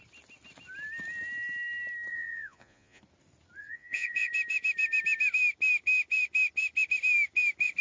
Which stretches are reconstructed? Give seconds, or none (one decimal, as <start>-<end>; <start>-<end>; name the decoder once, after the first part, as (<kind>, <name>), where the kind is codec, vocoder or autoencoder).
2.1-3.0 (vocoder, Vocos); 3.6-4.3